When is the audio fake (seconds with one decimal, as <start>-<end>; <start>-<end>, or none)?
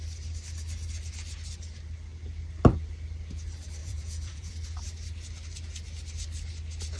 3.8-4.5